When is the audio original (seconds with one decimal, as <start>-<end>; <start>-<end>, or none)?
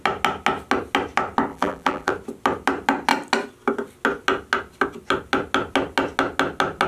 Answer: 0.0-1.5; 2.1-6.9